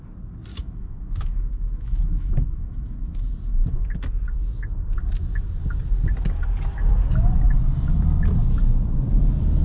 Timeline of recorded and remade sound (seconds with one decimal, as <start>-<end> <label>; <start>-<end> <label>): 0.0-0.5 recorded; 0.5-3.3 remade; 3.3-9.6 recorded